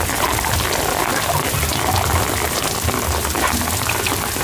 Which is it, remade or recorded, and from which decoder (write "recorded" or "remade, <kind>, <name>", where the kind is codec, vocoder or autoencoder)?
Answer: recorded